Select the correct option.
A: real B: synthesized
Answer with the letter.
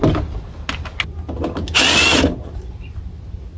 A